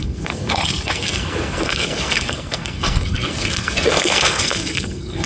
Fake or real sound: fake